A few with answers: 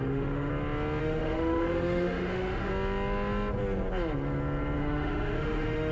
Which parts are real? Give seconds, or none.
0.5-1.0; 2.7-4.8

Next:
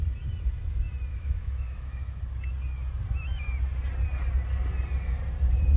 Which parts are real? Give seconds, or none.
0.0-1.1; 2.2-5.8

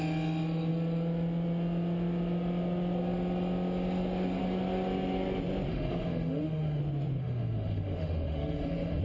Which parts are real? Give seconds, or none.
0.0-5.7; 6.8-7.2

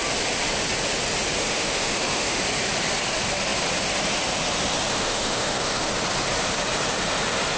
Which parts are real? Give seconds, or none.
0.0-1.4; 2.4-4.9; 5.9-7.6

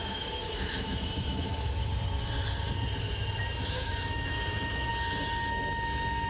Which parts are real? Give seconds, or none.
1.9-3.7; 4.9-6.3

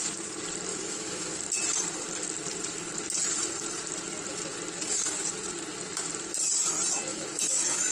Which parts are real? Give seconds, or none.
0.0-0.7; 1.4-7.1

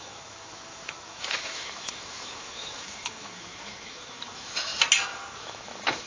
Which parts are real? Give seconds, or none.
4.7-5.4